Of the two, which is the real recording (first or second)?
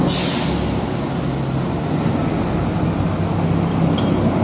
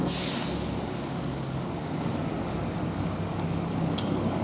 first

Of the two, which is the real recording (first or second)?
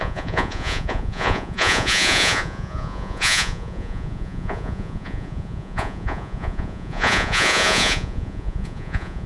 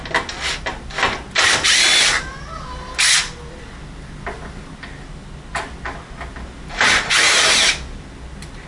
second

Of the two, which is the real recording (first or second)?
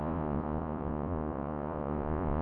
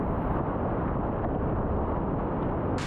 second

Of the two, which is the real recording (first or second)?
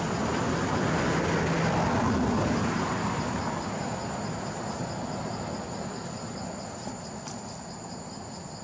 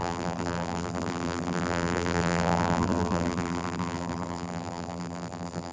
first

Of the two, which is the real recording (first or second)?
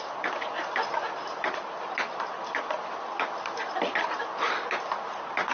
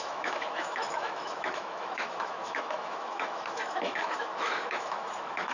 first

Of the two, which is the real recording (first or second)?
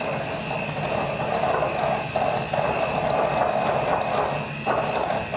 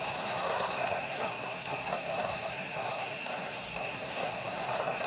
first